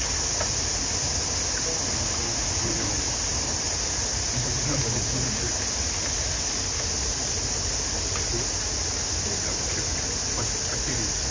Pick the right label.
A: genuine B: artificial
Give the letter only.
A